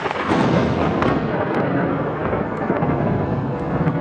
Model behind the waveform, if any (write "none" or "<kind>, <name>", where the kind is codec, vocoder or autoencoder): codec, SNAC